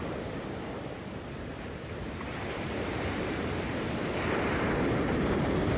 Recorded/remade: remade